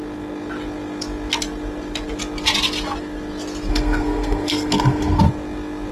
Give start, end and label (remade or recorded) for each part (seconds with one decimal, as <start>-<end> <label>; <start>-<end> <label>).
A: 0.0-3.7 recorded; 3.7-5.2 remade; 5.2-5.9 recorded